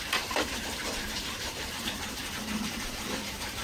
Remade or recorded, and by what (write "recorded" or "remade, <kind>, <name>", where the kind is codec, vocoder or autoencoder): remade, vocoder, BigVGAN v2